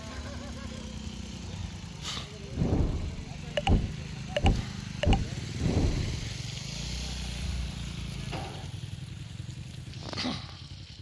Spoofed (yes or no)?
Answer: no